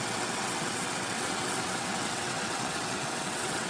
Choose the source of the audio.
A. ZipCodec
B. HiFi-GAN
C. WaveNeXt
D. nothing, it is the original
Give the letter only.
C